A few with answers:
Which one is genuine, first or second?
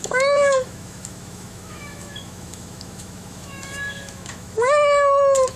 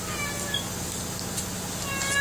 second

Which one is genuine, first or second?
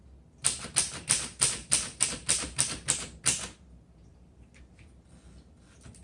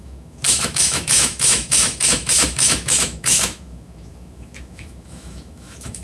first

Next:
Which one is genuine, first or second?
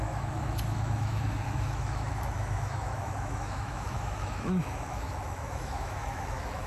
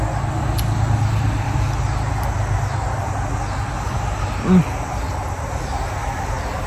second